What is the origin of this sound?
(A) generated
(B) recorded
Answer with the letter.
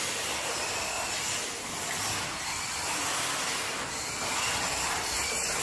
B